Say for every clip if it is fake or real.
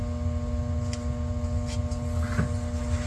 real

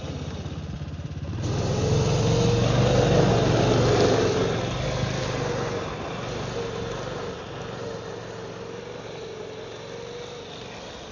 real